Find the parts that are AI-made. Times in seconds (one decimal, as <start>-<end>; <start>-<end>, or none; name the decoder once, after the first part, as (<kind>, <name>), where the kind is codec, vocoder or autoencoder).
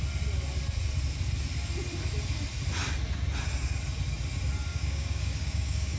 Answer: 4.7-6.0 (codec, DAC)